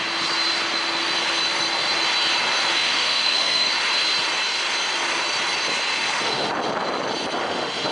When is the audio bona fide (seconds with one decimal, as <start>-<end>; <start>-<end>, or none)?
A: 0.0-2.8; 3.7-5.9; 6.5-7.4